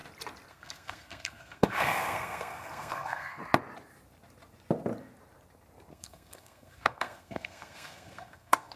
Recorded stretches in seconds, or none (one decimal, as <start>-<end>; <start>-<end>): 0.0-0.5; 3.4-5.9